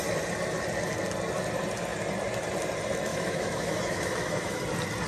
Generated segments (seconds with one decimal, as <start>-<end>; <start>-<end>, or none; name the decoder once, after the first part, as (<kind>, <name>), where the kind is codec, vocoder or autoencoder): 3.1-4.6 (autoencoder, DAC-VAE)